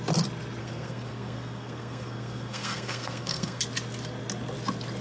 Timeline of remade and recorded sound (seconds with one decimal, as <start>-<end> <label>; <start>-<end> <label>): 0.0-0.6 recorded; 0.6-3.6 remade; 3.6-5.0 recorded